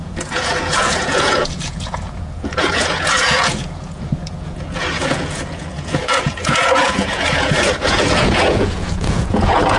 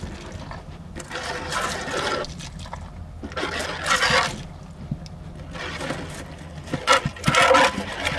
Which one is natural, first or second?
second